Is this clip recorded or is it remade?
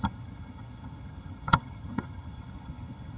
remade